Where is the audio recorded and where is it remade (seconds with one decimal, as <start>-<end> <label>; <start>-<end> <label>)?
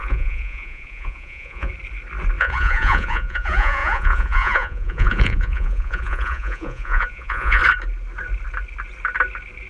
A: 0.0-1.7 remade; 1.7-2.4 recorded; 2.4-7.6 remade; 7.6-9.7 recorded